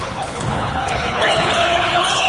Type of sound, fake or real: fake